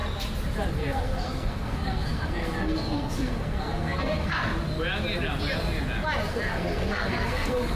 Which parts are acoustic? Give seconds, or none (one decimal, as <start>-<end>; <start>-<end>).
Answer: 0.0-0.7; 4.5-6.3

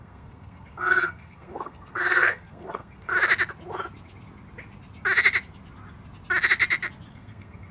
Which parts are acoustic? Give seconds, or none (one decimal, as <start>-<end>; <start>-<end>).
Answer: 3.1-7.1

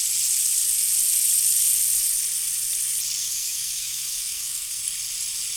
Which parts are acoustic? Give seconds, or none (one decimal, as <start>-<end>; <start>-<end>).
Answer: 0.0-3.2; 4.8-5.6

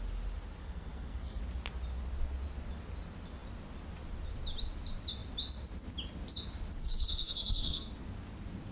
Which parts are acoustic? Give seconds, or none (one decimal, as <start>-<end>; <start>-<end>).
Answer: 0.0-0.6; 1.4-6.8; 7.9-8.7

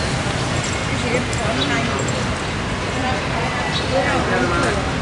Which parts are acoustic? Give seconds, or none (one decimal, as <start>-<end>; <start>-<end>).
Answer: 0.0-5.0